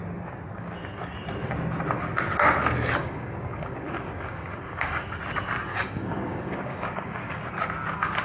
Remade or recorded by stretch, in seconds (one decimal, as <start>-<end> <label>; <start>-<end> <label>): 0.0-3.0 recorded; 3.0-5.2 remade; 5.2-5.7 recorded; 5.7-7.4 remade; 7.4-8.2 recorded